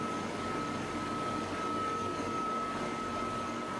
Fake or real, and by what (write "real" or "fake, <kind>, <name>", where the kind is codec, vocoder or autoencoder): fake, codec, DAC